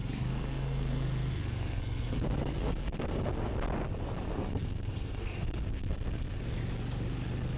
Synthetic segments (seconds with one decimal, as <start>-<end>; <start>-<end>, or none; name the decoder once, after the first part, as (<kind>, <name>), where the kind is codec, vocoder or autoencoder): 0.0-3.5 (codec, SNAC); 4.3-6.6